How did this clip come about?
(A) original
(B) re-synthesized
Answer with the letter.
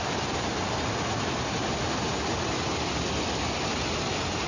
A